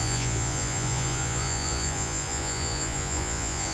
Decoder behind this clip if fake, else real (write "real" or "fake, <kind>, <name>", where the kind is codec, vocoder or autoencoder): fake, vocoder, Vocos